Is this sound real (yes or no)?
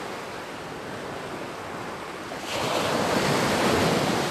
yes